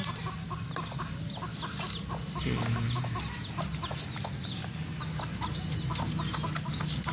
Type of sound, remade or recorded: recorded